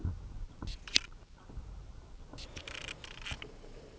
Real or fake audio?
real